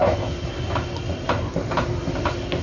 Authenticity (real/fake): real